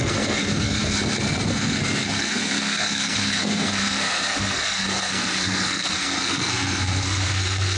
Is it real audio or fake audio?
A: fake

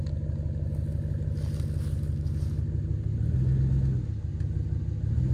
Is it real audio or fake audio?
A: real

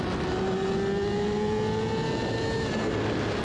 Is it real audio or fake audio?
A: real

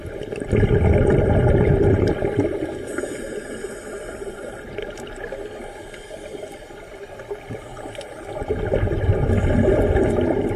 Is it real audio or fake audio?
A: real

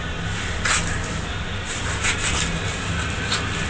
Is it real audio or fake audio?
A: real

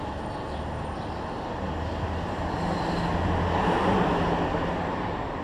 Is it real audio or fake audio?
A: real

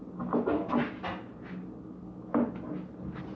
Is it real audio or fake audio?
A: real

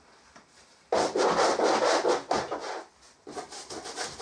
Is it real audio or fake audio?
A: real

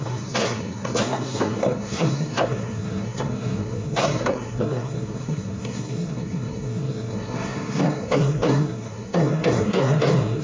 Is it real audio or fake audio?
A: fake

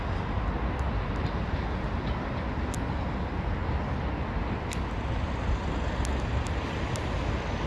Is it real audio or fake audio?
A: real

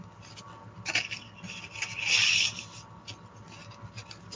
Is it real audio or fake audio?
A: real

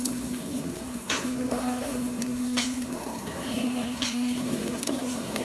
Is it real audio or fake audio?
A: fake